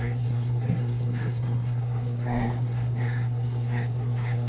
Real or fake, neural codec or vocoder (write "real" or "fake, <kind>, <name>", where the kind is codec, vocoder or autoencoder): fake, codec, SNAC